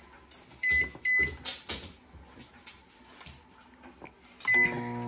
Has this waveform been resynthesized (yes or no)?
no